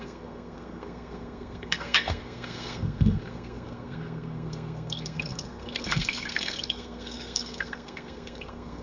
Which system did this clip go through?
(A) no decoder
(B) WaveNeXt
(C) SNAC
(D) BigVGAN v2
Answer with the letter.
C